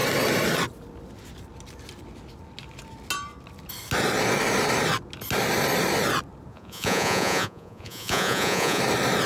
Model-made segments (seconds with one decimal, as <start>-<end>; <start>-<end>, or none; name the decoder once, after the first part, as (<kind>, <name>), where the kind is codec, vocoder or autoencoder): 6.5-8.8 (vocoder, Vocos)